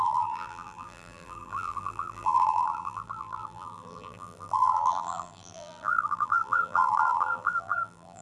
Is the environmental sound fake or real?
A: fake